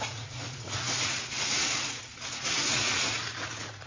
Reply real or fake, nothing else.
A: fake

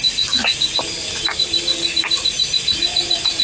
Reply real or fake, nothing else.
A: real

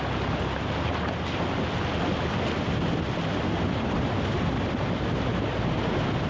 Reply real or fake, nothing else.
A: real